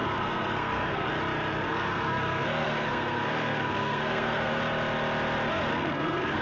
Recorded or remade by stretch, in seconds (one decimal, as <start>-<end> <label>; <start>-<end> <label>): 0.0-1.1 remade; 1.1-1.5 recorded; 1.5-4.6 remade; 4.6-5.7 recorded; 5.7-6.4 remade